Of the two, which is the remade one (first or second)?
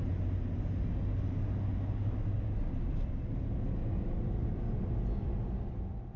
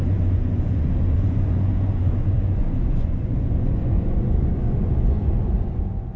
second